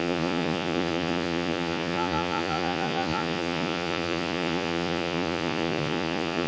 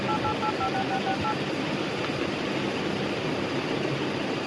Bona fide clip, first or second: second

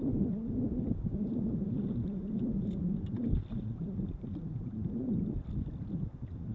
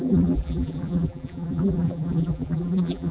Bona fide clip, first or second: first